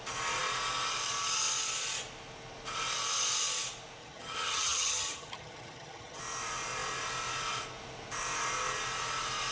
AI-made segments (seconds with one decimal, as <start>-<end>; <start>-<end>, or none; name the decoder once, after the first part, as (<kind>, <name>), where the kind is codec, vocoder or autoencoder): 4.0-6.2 (vocoder, HiFi-GAN)